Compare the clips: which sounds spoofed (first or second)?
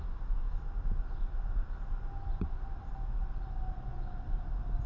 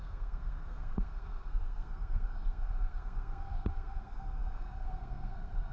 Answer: second